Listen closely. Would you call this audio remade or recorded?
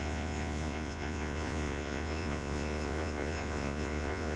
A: remade